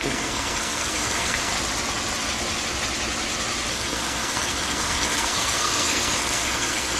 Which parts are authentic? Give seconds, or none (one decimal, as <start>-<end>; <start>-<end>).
1.5-3.7